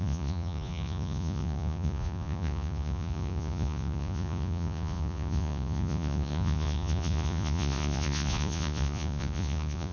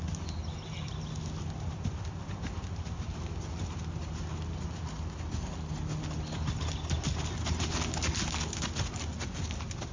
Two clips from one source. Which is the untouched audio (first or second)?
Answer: second